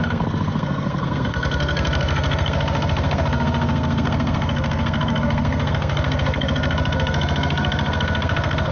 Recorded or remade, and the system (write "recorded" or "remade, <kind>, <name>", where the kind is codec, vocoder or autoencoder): remade, codec, SNAC